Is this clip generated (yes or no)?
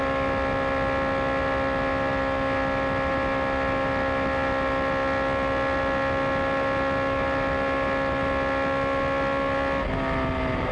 no